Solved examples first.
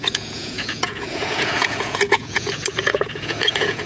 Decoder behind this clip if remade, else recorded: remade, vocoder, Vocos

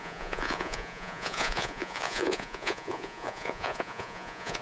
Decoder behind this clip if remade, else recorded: remade, vocoder, Vocos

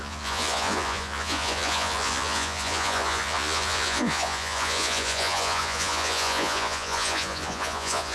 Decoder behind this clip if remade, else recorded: remade, vocoder, Vocos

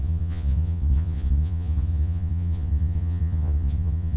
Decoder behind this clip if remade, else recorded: remade, vocoder, Vocos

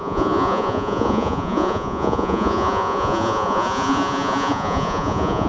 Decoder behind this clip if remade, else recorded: remade, vocoder, Vocos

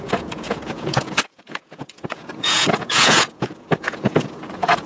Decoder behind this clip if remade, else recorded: remade, vocoder, Vocos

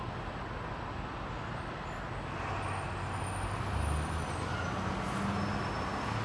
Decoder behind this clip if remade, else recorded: recorded